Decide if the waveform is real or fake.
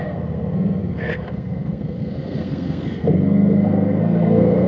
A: fake